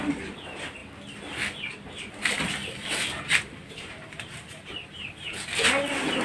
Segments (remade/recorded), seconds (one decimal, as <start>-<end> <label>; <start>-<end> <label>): 0.0-2.6 recorded; 2.6-4.7 remade; 4.7-6.2 recorded